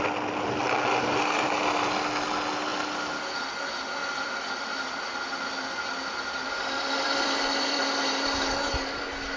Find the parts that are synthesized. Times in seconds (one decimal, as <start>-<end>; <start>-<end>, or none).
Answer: 4.0-5.0; 6.4-7.8